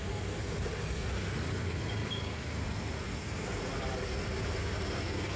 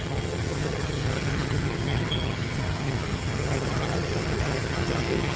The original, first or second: first